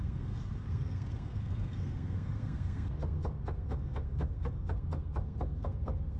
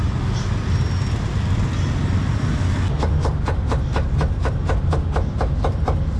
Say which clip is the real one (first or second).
second